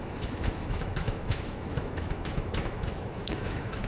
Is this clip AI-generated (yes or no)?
yes